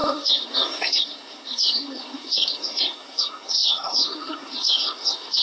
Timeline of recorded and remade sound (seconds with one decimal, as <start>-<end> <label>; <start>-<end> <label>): 0.0-5.4 remade